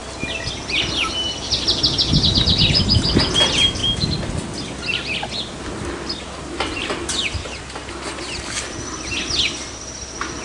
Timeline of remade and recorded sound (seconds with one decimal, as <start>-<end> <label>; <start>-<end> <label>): 0.0-10.4 recorded